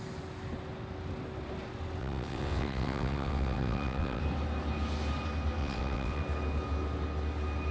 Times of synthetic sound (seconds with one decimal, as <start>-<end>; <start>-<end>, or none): 2.0-4.2; 5.6-6.2

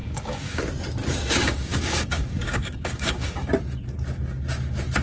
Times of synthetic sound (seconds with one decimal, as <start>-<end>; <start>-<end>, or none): 0.0-0.6; 1.0-3.5

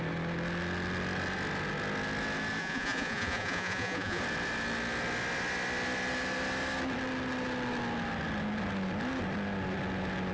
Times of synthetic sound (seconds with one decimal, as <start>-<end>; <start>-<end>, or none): 2.6-4.2

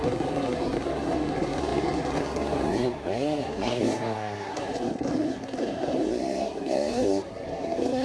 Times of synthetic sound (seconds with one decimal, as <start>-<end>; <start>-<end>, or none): 0.0-8.0

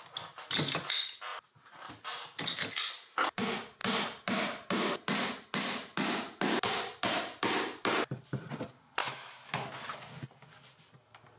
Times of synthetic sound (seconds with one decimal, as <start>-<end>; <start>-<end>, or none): 9.0-9.7

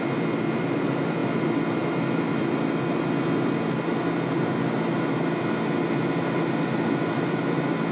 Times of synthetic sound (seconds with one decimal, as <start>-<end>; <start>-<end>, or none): none

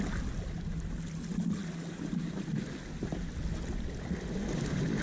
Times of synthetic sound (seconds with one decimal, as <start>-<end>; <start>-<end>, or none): none